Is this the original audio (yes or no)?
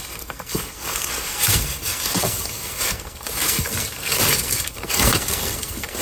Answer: no